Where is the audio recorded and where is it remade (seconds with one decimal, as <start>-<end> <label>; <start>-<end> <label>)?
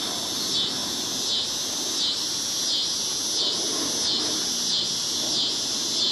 0.0-6.1 recorded